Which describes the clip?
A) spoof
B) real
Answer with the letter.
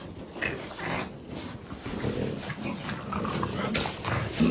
B